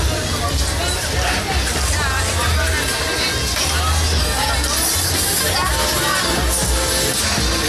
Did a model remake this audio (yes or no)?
no